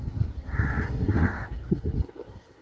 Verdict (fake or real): fake